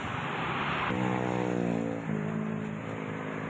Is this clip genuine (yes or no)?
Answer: yes